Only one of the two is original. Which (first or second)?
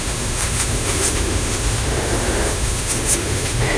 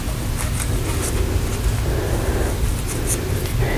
second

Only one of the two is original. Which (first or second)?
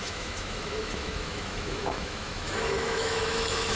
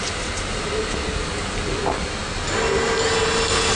second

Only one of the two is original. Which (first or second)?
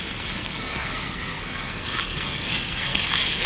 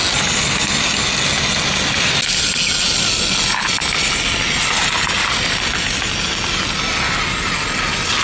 second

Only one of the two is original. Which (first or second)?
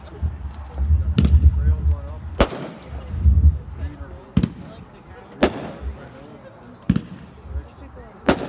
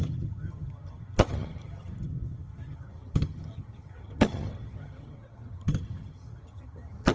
first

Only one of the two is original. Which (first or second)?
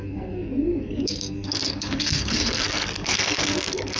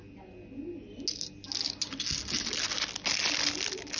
second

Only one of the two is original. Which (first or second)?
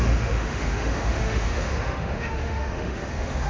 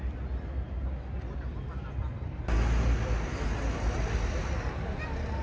second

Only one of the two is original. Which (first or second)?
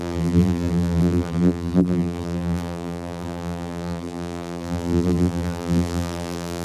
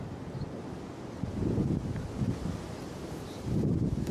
second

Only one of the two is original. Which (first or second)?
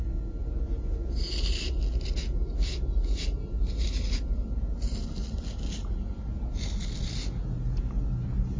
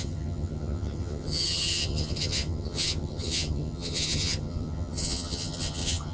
first